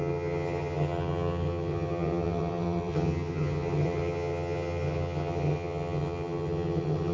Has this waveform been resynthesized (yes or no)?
yes